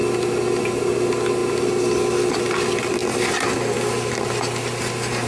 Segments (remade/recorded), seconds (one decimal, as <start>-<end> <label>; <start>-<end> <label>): 0.0-5.3 recorded